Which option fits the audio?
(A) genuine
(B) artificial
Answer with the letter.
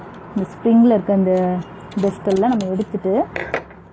A